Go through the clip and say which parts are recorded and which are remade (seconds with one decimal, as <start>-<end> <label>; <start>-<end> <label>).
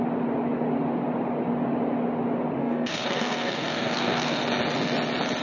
0.0-2.6 recorded; 2.6-4.4 remade; 4.4-5.4 recorded